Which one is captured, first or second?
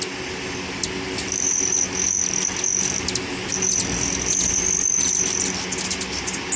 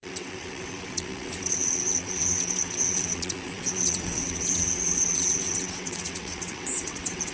first